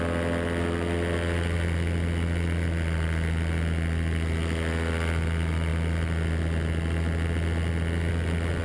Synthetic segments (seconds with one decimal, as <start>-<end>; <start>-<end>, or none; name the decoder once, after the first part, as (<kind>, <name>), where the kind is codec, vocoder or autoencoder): none